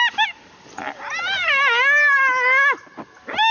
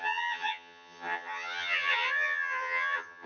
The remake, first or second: second